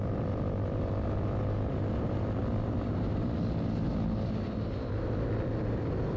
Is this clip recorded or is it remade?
remade